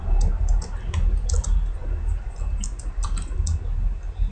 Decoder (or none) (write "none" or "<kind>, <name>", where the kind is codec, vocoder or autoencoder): none